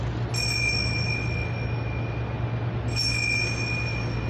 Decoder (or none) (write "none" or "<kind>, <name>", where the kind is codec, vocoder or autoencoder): none